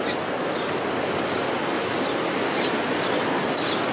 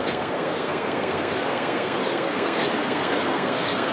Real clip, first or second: first